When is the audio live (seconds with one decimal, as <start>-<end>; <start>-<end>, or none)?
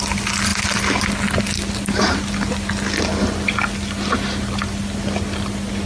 0.0-5.9